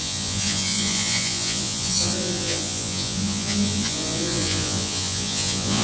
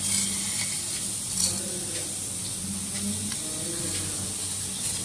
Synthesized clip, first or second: first